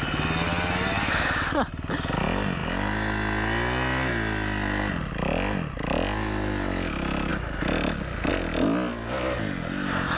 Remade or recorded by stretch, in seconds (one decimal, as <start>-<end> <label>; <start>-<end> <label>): 0.0-10.2 recorded